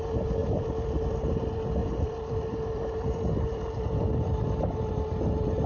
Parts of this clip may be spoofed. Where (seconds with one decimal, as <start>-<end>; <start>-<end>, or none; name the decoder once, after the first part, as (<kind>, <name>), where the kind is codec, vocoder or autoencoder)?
0.4-1.4 (vocoder, BigVGAN v2); 1.8-4.9